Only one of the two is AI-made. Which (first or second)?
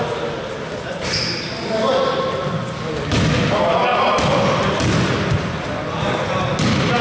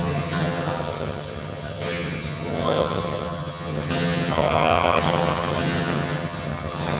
second